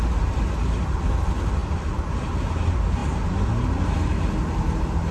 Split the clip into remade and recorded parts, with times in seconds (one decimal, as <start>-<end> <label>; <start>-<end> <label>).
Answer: 0.0-5.1 recorded